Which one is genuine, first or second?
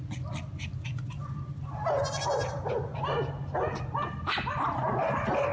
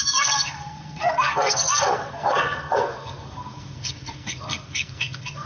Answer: first